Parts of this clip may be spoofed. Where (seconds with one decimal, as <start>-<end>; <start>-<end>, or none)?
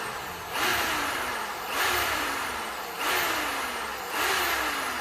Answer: 0.7-3.1